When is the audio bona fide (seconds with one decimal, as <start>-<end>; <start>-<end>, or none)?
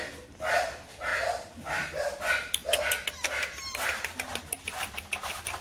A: 0.0-5.6